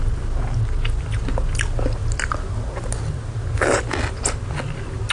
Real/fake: real